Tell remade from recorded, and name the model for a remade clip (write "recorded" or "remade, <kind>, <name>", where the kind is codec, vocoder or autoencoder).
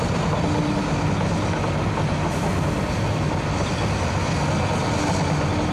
recorded